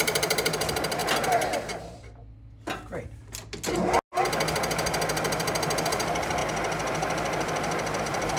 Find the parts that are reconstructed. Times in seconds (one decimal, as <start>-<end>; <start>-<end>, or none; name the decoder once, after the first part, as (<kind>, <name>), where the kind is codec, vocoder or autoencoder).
0.0-1.0 (vocoder, BigVGAN v2); 1.8-2.2; 5.9-6.4; 8.0-8.4